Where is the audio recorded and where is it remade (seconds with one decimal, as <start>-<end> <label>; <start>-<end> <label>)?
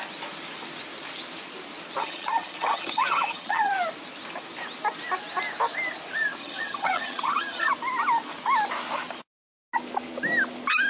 0.0-2.0 recorded; 2.0-3.7 remade; 3.7-6.4 recorded; 6.4-7.7 remade; 7.7-10.9 recorded